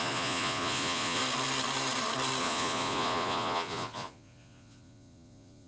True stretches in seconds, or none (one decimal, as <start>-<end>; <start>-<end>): 1.2-2.4